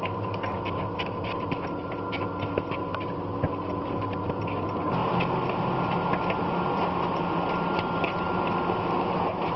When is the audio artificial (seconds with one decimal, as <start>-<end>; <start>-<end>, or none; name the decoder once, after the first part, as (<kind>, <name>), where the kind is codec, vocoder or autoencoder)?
none